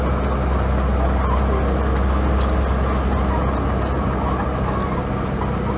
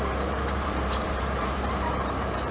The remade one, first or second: second